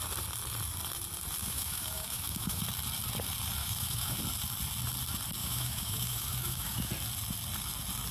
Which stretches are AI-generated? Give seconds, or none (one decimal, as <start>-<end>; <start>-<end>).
1.4-2.6; 3.6-4.2; 5.4-6.9